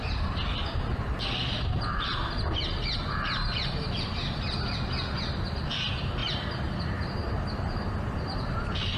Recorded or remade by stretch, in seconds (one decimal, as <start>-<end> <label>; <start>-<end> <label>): 0.0-9.0 remade